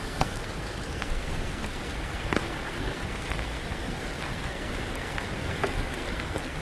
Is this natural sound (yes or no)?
no